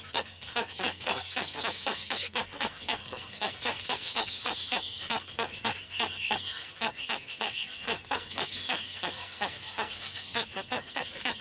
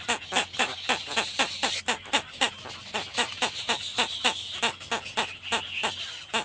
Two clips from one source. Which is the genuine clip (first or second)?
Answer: second